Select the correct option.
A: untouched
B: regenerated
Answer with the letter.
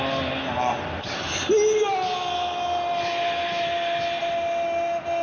A